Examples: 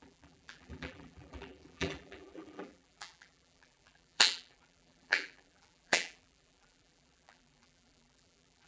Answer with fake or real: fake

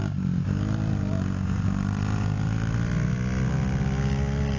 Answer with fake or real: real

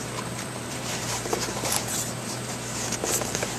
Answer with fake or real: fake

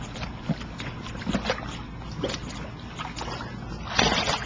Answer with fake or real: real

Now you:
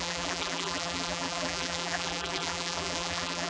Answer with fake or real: fake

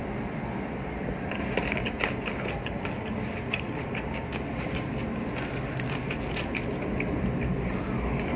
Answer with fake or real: real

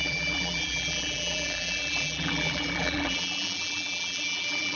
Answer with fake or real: fake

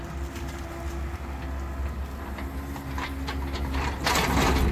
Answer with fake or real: real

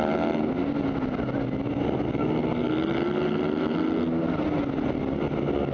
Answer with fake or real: real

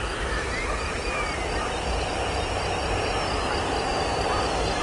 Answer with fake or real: real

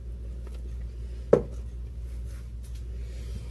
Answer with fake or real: real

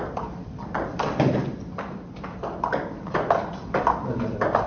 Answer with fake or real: fake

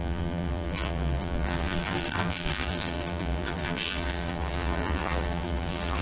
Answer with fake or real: fake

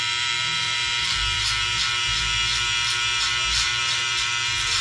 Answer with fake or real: fake